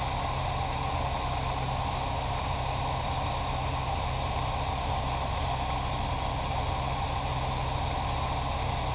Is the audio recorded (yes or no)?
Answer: yes